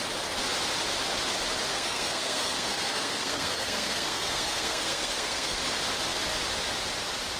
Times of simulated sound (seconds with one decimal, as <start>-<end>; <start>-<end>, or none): 1.7-5.6